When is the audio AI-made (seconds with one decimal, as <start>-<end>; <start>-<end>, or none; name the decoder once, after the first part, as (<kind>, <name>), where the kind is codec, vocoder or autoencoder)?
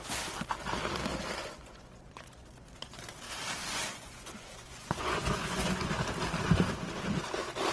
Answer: 1.4-3.0 (vocoder, Vocos); 3.6-5.9